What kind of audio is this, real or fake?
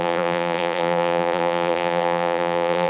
fake